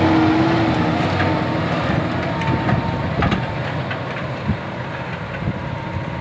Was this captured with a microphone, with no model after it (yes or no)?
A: yes